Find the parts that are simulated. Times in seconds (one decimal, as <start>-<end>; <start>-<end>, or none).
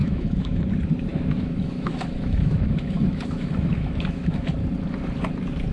0.0-0.7; 1.1-4.5